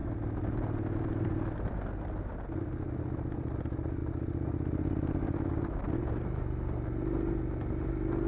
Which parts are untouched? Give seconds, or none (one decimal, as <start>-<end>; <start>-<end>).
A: 0.0-8.3